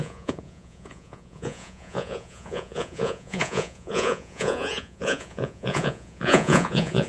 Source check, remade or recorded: remade